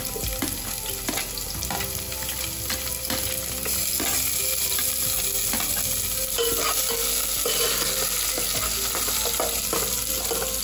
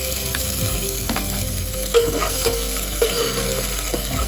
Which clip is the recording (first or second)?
first